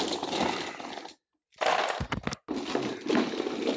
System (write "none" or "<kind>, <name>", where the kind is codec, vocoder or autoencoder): none